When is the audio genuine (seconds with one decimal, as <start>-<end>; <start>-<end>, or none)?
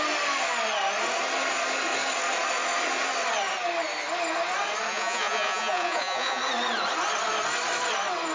0.0-4.9; 6.4-8.3